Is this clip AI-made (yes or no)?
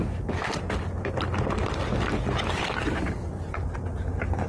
no